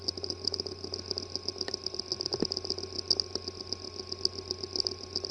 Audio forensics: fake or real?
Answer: real